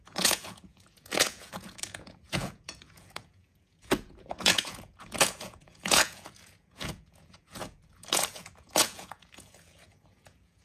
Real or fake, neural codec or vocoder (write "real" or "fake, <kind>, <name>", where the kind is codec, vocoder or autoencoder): fake, vocoder, Vocos